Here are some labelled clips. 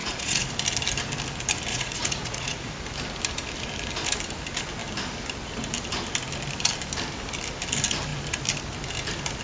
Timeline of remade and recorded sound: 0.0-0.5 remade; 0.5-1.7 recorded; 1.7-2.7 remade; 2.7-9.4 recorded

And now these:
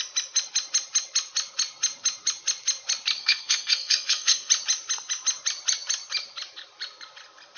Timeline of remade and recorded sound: 0.0-3.2 recorded; 3.2-4.5 remade; 4.5-7.6 recorded